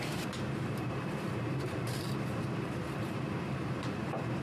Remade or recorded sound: remade